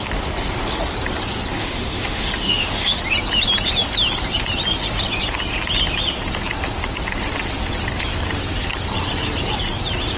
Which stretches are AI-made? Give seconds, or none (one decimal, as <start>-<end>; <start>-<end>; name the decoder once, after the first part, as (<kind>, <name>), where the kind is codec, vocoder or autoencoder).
1.6-3.0 (autoencoder, DAC-VAE)